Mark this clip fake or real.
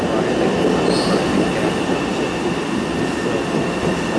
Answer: real